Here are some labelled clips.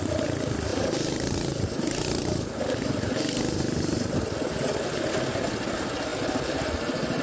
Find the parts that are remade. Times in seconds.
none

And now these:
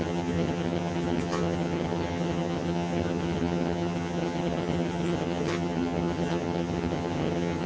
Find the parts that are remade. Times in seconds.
0.0-7.7

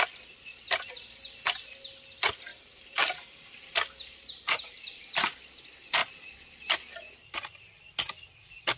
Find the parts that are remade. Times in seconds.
2.5-5.0

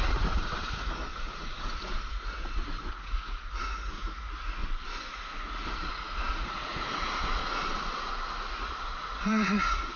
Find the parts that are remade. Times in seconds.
0.0-4.6; 5.1-7.4; 8.5-10.0